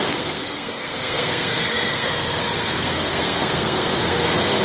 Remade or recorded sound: remade